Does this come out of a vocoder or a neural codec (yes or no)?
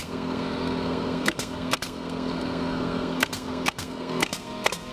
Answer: yes